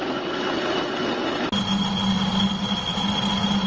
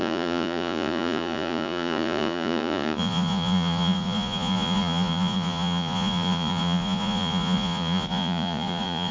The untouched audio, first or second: first